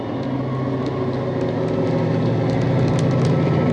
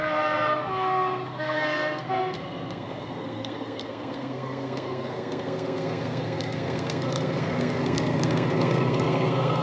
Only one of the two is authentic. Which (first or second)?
first